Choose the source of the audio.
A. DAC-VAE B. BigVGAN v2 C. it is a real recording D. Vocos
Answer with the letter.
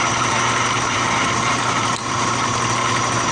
C